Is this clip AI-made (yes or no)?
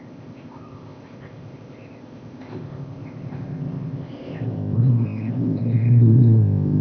yes